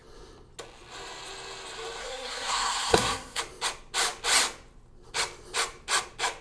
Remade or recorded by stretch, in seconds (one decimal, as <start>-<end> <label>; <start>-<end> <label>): 0.0-2.0 recorded; 2.0-3.4 remade; 3.4-6.4 recorded